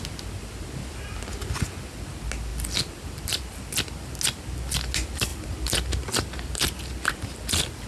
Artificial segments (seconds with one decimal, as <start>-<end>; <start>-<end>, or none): none